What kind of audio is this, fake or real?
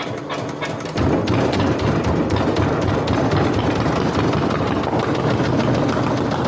real